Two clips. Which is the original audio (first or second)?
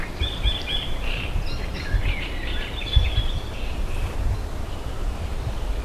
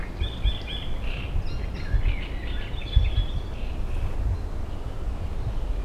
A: second